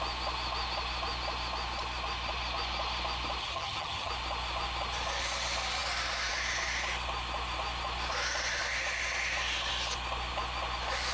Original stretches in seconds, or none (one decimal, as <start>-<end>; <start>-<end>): 0.0-3.4; 4.1-11.1